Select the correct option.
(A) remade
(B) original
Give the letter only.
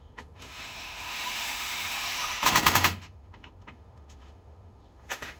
A